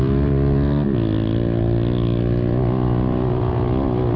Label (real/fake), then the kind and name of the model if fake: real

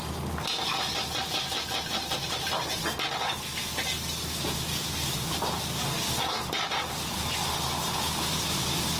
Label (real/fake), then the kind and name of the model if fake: real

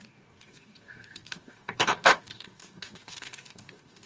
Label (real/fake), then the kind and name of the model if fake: fake, codec, DAC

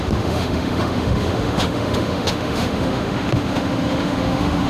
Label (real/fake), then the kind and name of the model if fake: fake, autoencoder, DAC-VAE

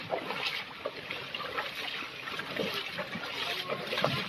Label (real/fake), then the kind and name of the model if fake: real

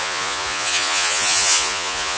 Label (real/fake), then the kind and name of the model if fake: fake, vocoder, Vocos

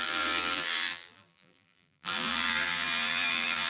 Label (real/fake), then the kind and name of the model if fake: fake, vocoder, BigVGAN v2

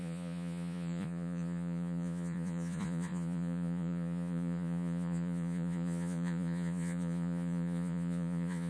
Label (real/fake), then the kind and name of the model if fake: fake, vocoder, Vocos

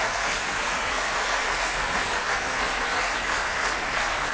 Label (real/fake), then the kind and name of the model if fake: fake, codec, SNAC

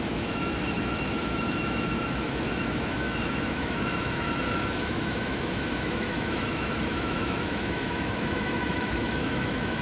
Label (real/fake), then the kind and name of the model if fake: fake, autoencoder, DAC-VAE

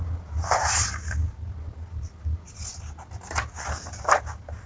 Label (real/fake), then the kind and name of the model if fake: real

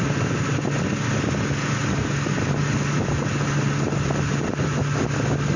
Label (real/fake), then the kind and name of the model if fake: real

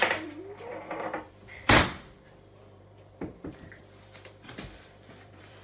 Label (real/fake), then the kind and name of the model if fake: fake, vocoder, BigVGAN v2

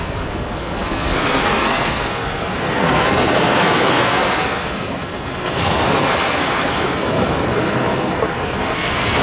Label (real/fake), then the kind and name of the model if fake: fake, codec, SNAC